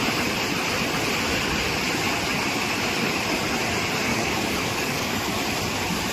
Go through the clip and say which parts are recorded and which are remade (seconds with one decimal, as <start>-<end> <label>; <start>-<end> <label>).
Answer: 0.0-4.1 recorded; 4.1-5.3 remade; 5.3-6.1 recorded